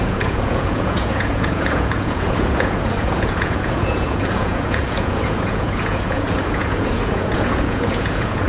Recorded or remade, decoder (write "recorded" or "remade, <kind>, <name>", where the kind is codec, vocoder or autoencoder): remade, vocoder, Vocos